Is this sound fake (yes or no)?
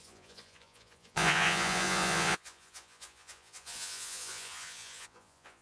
yes